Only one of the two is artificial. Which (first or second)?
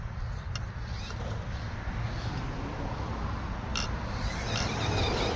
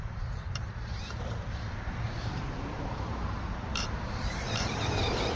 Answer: second